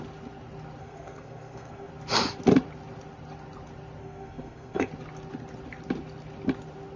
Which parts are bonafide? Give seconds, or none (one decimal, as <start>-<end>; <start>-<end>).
0.0-0.8; 1.9-4.0; 4.9-7.0